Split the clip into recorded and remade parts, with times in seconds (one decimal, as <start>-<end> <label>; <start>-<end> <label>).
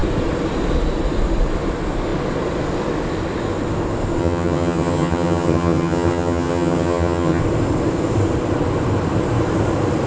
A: 0.0-4.2 recorded; 4.2-7.4 remade; 7.4-10.1 recorded